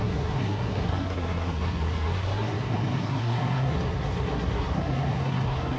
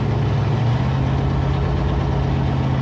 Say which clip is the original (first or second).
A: second